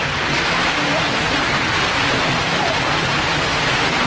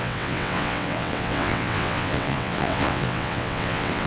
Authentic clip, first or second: first